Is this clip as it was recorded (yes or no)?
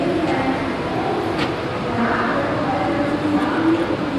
yes